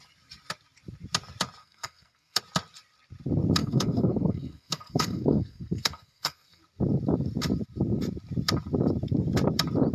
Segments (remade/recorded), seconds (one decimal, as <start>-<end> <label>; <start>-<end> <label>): 0.0-1.6 recorded; 1.6-2.4 remade; 2.4-3.6 recorded; 3.6-6.6 remade; 6.6-9.9 recorded